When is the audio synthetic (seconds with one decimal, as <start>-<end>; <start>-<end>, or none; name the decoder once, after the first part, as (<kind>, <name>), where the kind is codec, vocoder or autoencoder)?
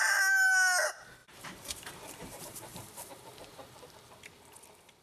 1.2-3.1 (vocoder, BigVGAN v2)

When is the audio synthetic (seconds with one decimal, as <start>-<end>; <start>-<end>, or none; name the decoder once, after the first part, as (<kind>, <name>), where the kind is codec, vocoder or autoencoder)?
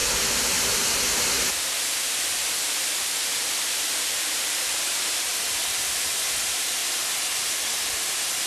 2.3-6.8 (vocoder, BigVGAN v2); 8.0-8.5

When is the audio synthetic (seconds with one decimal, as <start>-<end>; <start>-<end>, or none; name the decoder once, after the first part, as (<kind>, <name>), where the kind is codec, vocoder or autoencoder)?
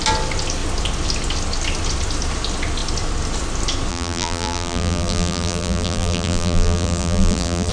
3.9-7.7 (vocoder, BigVGAN v2)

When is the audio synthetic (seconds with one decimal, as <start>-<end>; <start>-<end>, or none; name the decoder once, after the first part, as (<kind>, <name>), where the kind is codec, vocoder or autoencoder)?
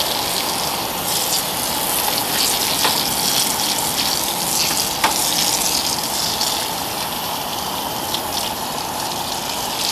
none